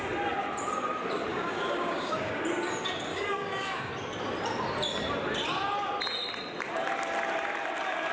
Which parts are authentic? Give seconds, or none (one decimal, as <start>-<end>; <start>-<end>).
0.0-1.3; 2.4-3.1; 3.9-8.1